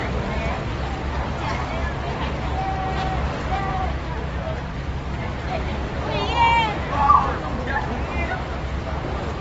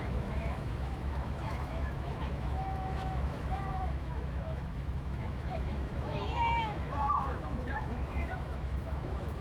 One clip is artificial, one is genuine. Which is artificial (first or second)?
second